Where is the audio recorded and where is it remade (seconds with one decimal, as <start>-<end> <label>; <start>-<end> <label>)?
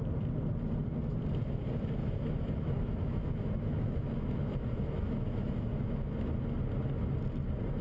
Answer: 0.0-2.0 recorded; 2.0-6.3 remade; 6.3-7.8 recorded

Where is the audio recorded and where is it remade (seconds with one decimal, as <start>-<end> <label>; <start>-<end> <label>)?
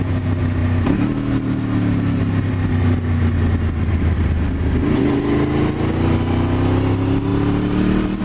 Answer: 0.0-8.2 recorded